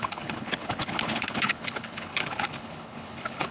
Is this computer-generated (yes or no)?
yes